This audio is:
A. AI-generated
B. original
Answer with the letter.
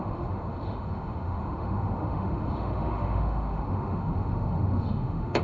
A